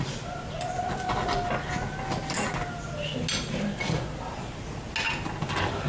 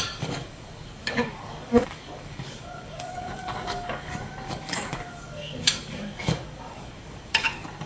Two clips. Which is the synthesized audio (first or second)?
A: second